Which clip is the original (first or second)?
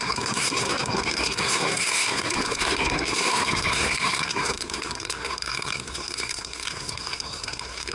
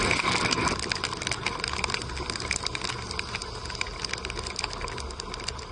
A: second